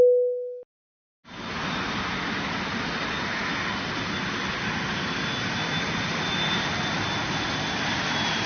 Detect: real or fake real